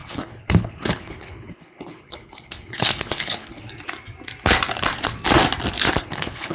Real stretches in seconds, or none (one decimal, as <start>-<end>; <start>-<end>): 3.7-6.0